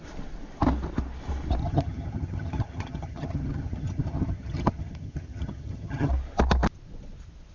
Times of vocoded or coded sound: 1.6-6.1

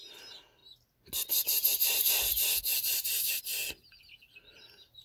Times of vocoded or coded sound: none